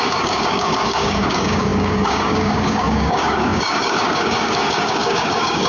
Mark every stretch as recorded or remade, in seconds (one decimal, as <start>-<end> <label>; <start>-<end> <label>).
0.0-5.7 remade